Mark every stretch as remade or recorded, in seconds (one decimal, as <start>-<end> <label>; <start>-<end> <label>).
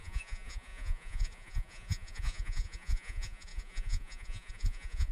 0.0-5.1 remade